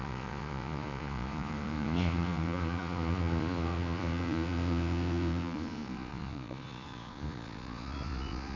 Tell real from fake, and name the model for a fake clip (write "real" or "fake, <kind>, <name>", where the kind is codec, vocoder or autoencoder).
fake, vocoder, Vocos